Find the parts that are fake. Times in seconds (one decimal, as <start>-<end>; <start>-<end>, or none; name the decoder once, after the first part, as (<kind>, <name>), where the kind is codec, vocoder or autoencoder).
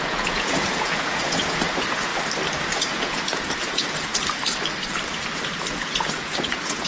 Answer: 0.0-2.1 (vocoder, Vocos); 2.7-4.1; 5.7-6.9